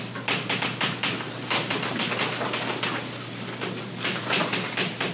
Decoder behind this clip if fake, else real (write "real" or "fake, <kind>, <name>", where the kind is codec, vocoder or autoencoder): fake, vocoder, BigVGAN v2